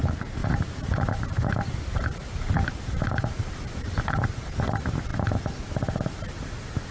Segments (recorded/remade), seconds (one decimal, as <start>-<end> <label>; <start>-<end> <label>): 0.0-0.4 recorded; 0.4-4.5 remade; 4.5-6.9 recorded